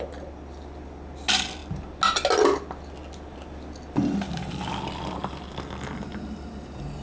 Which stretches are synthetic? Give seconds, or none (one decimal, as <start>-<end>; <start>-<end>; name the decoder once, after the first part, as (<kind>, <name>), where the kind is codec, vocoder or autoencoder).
none

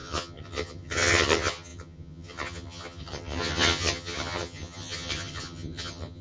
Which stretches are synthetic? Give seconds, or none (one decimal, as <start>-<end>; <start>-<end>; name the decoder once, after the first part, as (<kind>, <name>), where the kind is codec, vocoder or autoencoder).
0.0-6.2 (vocoder, HiFi-GAN)

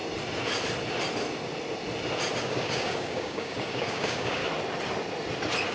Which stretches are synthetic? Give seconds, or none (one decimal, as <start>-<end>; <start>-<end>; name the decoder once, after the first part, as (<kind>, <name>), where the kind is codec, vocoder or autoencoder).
2.4-4.4 (codec, DAC)

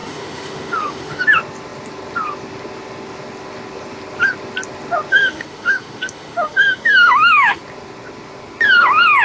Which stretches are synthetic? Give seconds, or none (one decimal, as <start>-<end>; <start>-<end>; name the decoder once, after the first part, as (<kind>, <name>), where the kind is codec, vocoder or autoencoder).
0.0-1.2 (autoencoder, DAC-VAE); 5.1-7.6

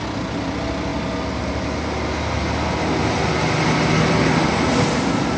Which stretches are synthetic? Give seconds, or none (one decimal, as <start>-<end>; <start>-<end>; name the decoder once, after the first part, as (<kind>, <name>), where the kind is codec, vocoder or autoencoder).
none

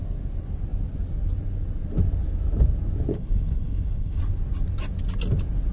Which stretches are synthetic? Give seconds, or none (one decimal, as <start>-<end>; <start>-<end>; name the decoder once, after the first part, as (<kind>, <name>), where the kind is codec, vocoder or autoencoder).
3.1-4.2 (codec, HILCodec)

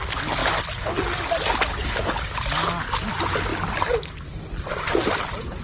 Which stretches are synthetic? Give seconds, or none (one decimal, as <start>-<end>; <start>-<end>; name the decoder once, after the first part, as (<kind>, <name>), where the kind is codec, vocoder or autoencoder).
none

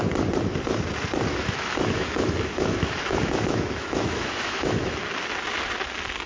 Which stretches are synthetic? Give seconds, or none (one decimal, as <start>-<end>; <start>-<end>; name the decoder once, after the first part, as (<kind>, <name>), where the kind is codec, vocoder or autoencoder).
1.3-5.0 (autoencoder, DAC-VAE)